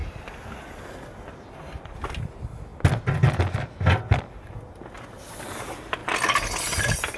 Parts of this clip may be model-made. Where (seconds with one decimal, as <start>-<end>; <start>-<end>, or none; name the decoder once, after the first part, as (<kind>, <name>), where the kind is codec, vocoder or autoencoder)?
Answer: 6.0-7.2 (vocoder, BigVGAN v2)